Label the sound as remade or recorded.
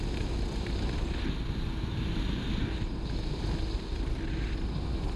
recorded